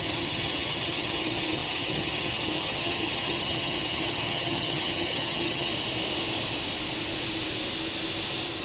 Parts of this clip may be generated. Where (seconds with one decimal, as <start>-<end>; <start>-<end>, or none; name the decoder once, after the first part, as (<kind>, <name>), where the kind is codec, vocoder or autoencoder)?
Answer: 0.0-5.7 (vocoder, HiFi-GAN)